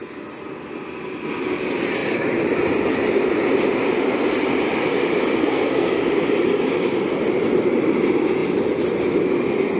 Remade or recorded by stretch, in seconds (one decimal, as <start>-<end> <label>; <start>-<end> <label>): 0.0-5.4 recorded; 5.4-6.1 remade; 6.1-9.8 recorded